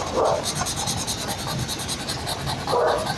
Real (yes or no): yes